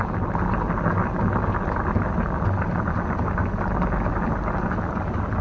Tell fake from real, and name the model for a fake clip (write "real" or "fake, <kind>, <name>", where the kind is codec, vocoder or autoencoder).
real